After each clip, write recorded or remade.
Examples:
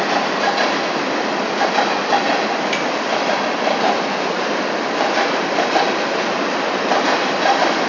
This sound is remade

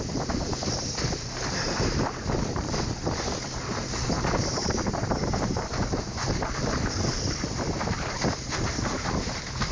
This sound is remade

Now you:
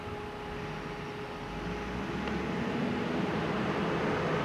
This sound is recorded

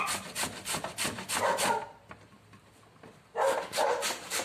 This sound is remade